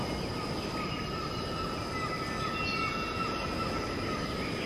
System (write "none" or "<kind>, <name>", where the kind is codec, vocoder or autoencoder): none